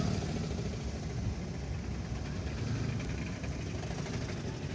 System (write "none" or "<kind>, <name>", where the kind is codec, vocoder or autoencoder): none